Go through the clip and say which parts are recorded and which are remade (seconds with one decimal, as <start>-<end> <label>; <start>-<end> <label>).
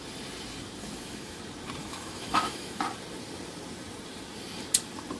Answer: 0.0-0.8 recorded; 0.8-1.4 remade; 1.4-1.8 recorded; 1.8-2.8 remade; 2.8-5.2 recorded